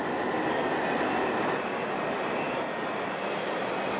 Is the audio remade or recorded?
recorded